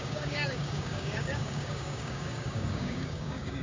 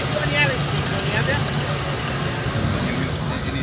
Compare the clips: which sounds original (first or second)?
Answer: second